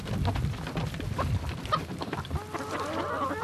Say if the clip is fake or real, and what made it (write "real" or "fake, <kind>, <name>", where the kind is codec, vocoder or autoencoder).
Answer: real